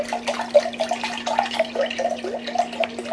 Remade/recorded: recorded